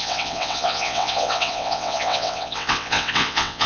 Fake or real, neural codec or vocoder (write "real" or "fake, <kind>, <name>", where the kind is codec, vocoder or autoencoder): fake, vocoder, WaveNeXt